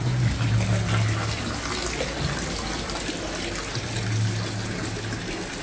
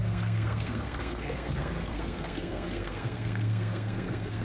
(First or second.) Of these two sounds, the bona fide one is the first